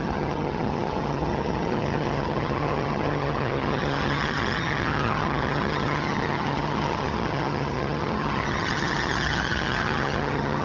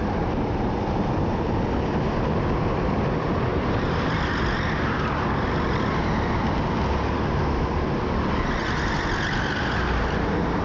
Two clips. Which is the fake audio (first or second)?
first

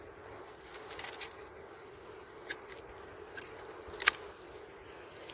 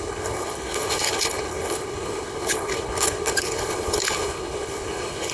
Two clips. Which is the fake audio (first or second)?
second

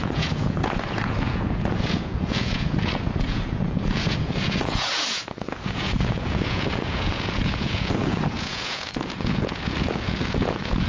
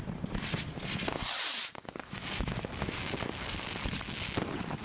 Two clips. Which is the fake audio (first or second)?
first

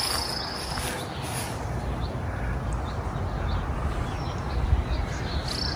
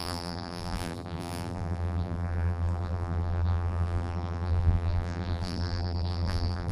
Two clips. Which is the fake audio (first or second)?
second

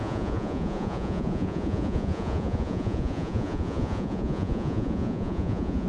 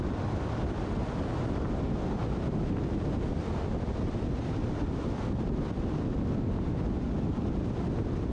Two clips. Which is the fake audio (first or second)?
first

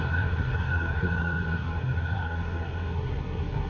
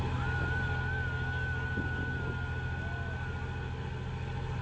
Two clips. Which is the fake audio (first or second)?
first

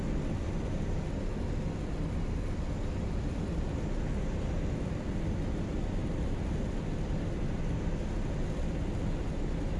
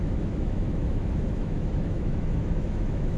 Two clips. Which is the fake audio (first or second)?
second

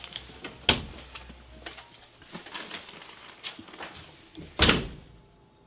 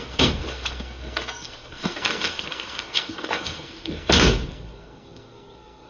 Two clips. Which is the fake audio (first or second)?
second